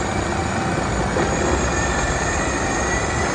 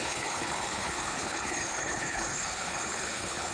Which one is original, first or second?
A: first